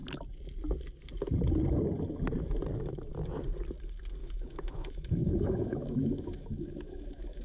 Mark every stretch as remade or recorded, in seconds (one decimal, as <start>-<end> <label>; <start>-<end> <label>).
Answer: 0.0-4.2 recorded; 4.2-7.4 remade